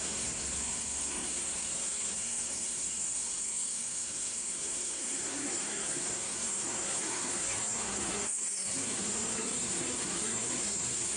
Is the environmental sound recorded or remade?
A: remade